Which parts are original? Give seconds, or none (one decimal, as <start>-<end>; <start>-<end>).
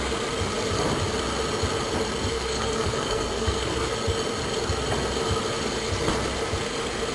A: 0.0-2.3; 3.9-7.1